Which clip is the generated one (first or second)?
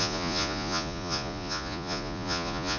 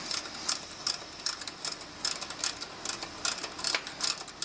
first